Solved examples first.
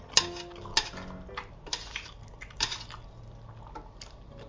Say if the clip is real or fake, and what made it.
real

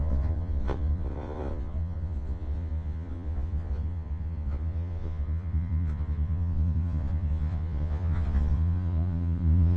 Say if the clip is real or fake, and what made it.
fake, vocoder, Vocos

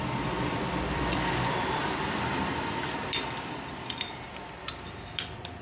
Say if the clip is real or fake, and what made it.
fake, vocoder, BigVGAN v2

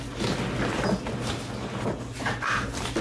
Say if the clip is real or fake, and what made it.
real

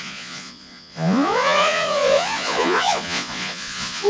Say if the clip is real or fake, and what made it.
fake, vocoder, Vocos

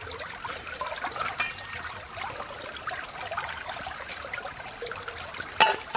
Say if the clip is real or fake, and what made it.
real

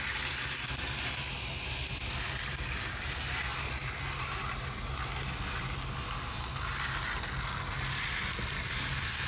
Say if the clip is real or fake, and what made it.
real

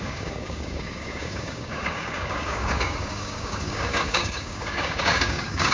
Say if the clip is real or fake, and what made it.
fake, codec, DAC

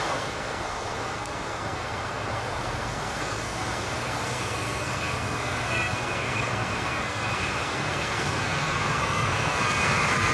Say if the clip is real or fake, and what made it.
fake, codec, SNAC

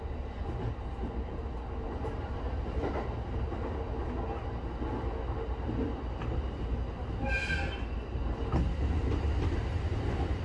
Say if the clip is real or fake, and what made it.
real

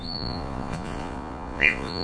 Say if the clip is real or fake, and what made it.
fake, vocoder, Vocos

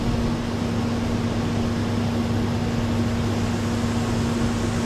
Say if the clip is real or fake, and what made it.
real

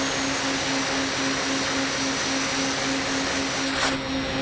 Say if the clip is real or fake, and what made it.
real